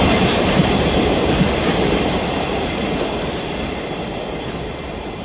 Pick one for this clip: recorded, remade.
remade